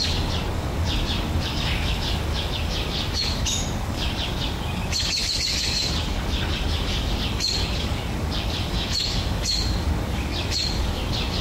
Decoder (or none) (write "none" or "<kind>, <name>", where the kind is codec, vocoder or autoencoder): codec, DAC